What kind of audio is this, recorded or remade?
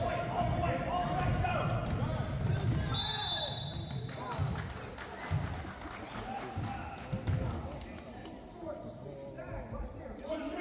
recorded